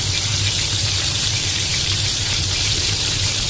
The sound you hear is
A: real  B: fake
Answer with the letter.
B